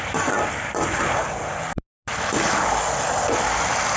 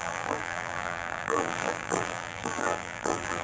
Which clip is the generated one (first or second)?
second